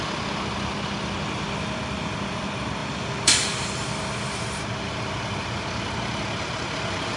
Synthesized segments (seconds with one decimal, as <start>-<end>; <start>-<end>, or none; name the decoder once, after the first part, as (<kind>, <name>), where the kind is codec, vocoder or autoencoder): 2.8-3.7 (vocoder, BigVGAN v2)